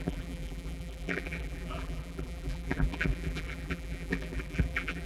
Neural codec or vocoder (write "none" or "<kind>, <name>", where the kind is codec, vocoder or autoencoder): vocoder, BigVGAN v2